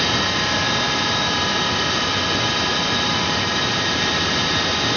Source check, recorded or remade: recorded